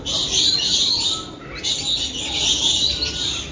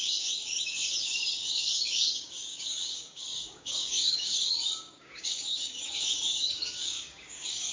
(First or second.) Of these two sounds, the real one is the first